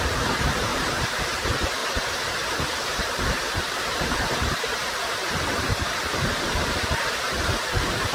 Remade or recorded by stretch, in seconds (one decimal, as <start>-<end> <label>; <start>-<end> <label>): 0.0-1.8 remade; 1.8-2.7 recorded; 2.7-8.1 remade